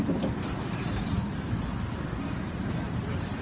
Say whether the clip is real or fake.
real